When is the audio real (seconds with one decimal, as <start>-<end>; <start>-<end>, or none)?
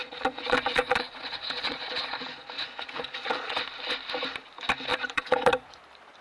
3.6-4.9; 5.8-6.2